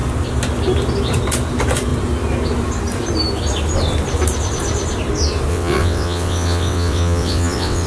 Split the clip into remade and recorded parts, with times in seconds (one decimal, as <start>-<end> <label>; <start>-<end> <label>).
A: 0.0-5.5 recorded; 5.5-7.9 remade